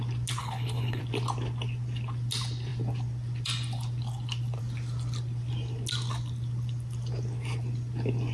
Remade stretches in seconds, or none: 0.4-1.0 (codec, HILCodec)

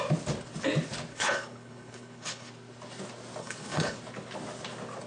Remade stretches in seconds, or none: 1.1-2.5 (codec, HILCodec); 3.4-4.0

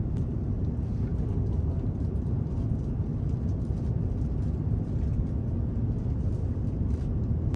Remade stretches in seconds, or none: none

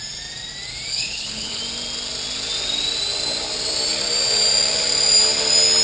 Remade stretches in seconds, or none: 0.9-1.6 (codec, HILCodec)